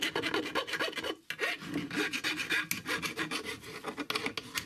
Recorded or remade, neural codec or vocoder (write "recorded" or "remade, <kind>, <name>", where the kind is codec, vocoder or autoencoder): recorded